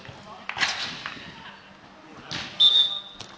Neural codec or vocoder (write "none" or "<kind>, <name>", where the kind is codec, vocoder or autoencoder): none